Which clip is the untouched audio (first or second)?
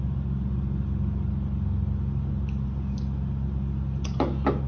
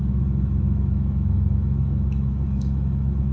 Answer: first